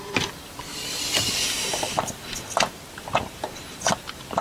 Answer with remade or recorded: remade